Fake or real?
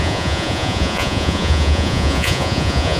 fake